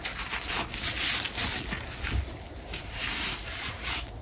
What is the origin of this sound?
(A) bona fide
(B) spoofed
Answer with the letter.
A